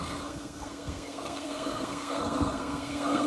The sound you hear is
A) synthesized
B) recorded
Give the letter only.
A